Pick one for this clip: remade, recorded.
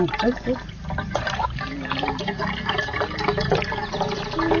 remade